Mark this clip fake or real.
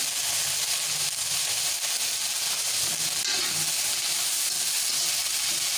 real